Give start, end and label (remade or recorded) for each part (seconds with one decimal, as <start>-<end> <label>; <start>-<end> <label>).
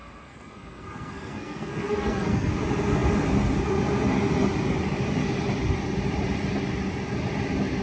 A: 0.0-2.5 remade; 2.5-7.8 recorded